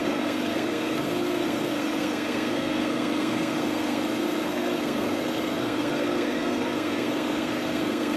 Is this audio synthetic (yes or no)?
yes